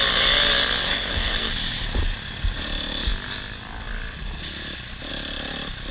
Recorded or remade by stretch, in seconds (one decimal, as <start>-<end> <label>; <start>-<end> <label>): 0.0-0.9 recorded; 0.9-1.5 remade; 1.5-5.9 recorded